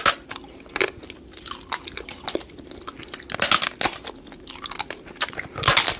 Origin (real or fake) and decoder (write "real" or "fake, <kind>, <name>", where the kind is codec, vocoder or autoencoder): real